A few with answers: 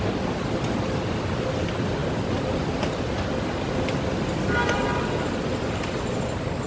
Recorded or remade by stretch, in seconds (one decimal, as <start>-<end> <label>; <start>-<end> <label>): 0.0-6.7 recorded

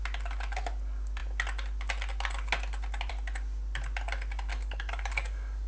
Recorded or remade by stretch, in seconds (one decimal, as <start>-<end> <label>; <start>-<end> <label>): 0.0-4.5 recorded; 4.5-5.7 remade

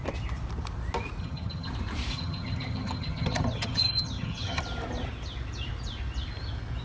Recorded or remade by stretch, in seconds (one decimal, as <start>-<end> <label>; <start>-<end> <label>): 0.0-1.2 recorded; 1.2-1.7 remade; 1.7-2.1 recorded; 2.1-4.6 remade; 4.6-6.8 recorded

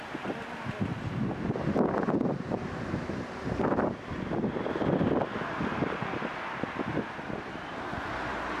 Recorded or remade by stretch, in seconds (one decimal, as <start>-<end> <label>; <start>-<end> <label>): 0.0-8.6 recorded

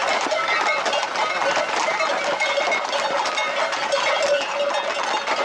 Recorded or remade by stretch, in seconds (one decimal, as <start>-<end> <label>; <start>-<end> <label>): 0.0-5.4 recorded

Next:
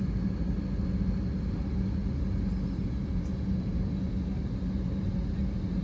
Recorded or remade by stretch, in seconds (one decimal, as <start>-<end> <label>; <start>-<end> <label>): 0.0-5.8 recorded